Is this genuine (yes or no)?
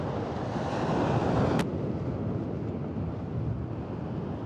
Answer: yes